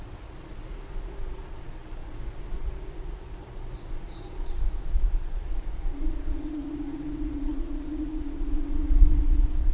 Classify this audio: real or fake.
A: fake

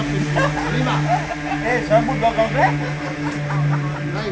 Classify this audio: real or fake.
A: real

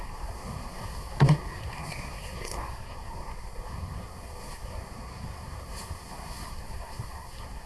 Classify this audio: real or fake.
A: fake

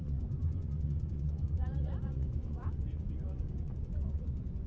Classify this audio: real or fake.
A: fake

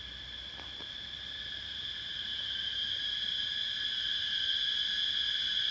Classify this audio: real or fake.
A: fake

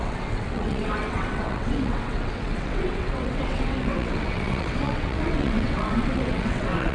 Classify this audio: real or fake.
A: fake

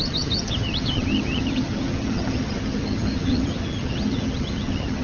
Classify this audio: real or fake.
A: fake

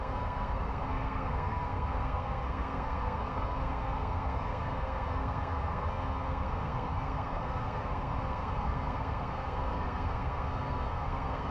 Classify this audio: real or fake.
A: fake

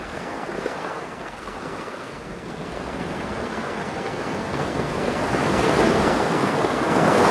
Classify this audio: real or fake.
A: fake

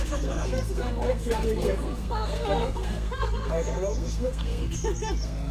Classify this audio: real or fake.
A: fake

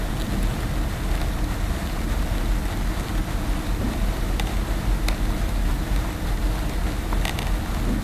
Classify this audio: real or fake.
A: real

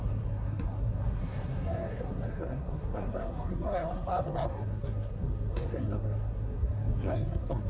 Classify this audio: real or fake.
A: fake